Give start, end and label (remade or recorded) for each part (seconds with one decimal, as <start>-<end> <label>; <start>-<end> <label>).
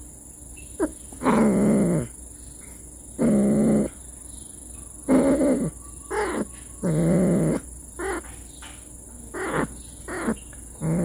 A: 0.0-11.0 recorded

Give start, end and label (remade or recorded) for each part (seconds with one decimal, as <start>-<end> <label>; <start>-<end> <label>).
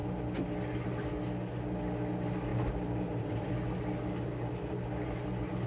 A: 0.0-2.5 recorded; 2.5-3.5 remade; 3.5-5.7 recorded